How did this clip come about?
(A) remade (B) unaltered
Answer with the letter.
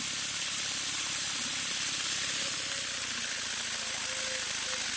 B